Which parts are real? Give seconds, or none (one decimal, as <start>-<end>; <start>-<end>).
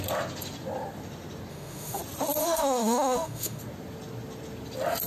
0.0-1.5; 2.0-2.4; 3.6-5.1